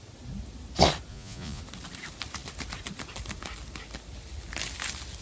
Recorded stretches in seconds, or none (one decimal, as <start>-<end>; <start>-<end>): 0.0-1.1; 1.6-5.2